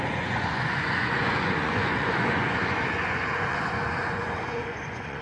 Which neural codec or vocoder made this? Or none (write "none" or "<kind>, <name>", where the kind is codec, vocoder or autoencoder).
vocoder, Vocos